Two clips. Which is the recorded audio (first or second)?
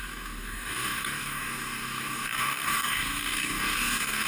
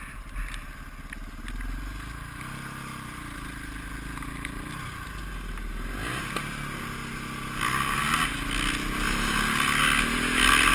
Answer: second